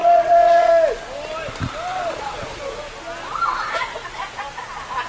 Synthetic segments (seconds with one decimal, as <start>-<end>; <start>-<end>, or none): 0.0-0.7; 1.9-2.6